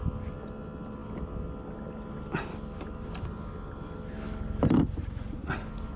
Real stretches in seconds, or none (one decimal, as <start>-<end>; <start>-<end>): 0.0-5.0; 5.5-6.0